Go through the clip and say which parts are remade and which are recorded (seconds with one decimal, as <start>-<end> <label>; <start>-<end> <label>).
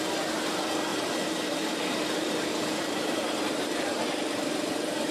0.0-0.9 recorded; 0.9-4.0 remade; 4.0-5.1 recorded